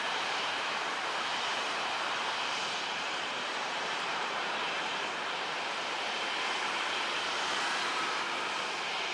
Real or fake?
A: fake